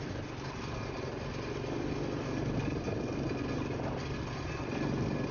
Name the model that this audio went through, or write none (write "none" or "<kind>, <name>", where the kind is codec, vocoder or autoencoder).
none